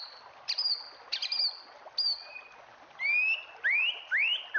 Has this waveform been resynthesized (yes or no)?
no